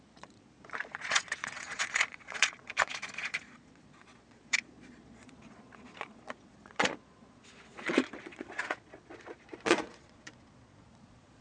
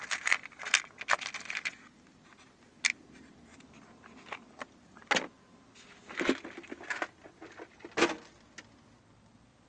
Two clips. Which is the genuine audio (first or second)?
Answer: second